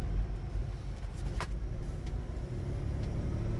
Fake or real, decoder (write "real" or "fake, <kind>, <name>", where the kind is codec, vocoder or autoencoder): real